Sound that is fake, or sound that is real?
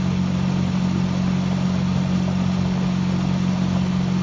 real